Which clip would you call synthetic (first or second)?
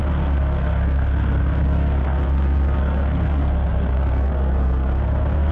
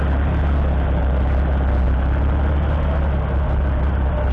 first